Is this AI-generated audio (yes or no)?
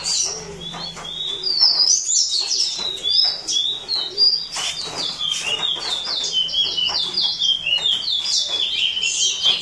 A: no